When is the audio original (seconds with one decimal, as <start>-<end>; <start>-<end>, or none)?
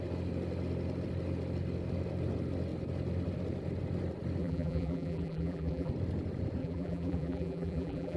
0.0-4.4; 5.9-6.6